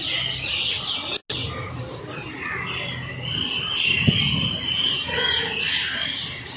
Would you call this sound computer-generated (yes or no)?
no